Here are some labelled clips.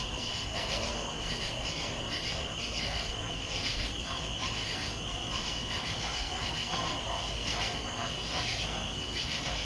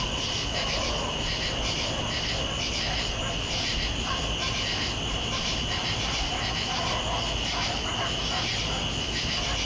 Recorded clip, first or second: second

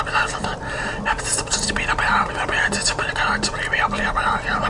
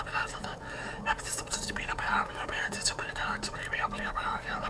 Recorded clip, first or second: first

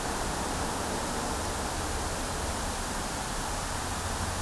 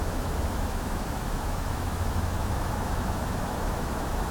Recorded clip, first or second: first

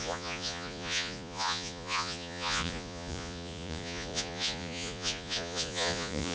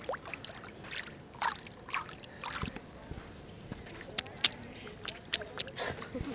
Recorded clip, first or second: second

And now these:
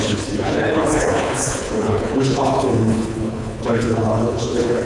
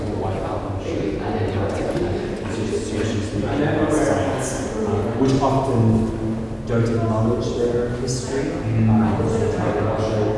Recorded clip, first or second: second